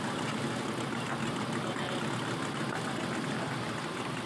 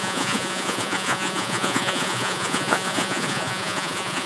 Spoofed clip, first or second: second